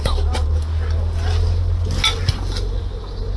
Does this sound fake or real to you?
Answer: real